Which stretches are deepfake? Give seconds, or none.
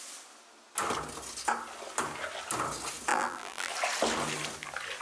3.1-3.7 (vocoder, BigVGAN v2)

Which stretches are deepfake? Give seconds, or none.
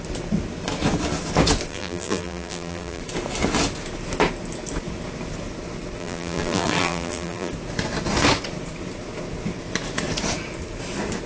1.7-3.0 (vocoder, BigVGAN v2); 6.0-7.5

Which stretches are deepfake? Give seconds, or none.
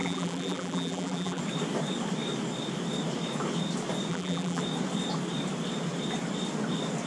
0.0-1.4 (vocoder, BigVGAN v2); 4.1-4.6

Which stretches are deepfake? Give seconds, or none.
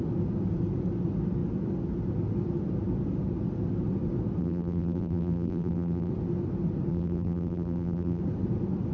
4.4-6.1 (vocoder, BigVGAN v2); 6.9-8.2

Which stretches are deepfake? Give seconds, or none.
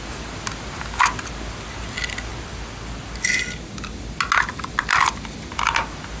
none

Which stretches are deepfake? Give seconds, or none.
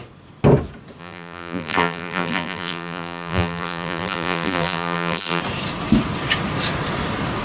1.0-5.4 (vocoder, BigVGAN v2)